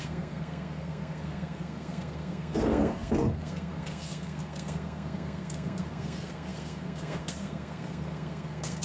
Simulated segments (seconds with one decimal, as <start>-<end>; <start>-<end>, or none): 0.0-8.8